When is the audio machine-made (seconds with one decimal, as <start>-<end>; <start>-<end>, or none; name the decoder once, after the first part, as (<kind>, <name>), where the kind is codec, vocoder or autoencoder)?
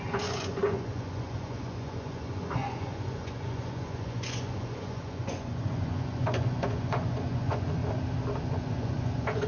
0.0-7.8 (vocoder, Vocos); 8.4-9.5